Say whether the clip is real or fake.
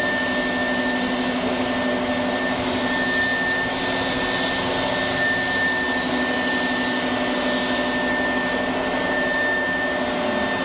real